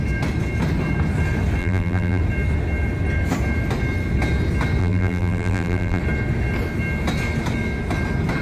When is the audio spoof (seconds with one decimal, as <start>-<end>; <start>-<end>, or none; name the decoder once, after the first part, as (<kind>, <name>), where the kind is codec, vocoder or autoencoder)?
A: 1.6-2.2 (vocoder, BigVGAN v2); 4.8-6.0